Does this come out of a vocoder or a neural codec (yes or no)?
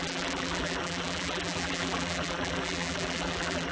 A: yes